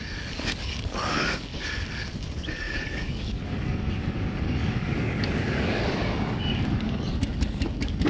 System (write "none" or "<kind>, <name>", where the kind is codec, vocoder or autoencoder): codec, DAC